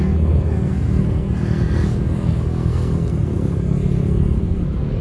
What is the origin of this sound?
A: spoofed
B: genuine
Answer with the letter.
A